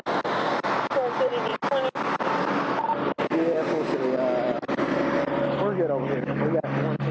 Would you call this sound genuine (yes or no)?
yes